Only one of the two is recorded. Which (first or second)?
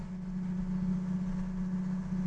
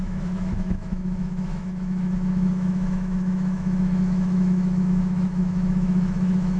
first